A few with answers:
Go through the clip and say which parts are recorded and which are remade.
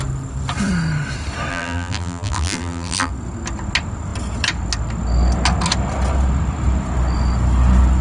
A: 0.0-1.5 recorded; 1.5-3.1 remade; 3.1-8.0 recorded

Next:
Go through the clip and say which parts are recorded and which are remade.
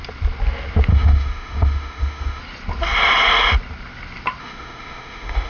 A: 0.0-0.9 recorded; 0.9-2.4 remade; 2.4-4.4 recorded; 4.4-5.5 remade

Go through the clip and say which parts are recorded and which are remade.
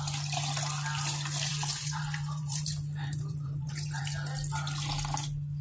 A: 0.0-1.5 recorded; 1.5-4.0 remade; 4.0-5.6 recorded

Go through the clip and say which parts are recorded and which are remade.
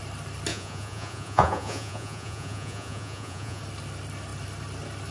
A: 0.0-0.5 recorded; 0.5-3.6 remade; 3.6-5.1 recorded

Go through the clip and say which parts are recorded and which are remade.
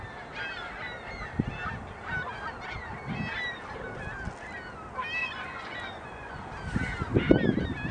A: 0.0-5.2 recorded; 5.2-6.5 remade; 6.5-7.9 recorded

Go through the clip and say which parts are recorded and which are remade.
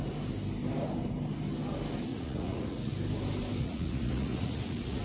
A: 0.0-2.1 recorded; 2.1-2.9 remade; 2.9-3.6 recorded; 3.6-5.0 remade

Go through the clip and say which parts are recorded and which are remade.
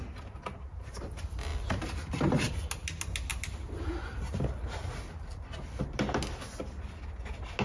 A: 0.0-7.6 recorded